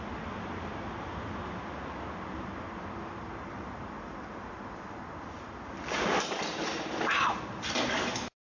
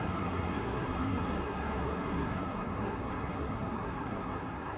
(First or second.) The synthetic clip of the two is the second